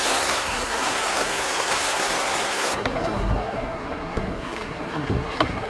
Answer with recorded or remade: remade